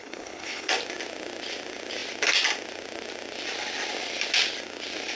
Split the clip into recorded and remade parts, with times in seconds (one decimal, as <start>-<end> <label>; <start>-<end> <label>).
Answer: 0.0-0.7 remade; 0.7-5.2 recorded